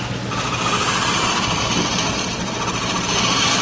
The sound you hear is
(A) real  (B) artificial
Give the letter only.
A